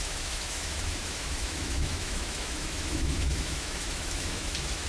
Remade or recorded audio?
remade